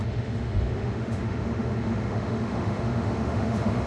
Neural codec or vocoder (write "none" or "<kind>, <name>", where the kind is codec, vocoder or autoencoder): autoencoder, DAC-VAE